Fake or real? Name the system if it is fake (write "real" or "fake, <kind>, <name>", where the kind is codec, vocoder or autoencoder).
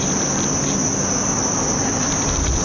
real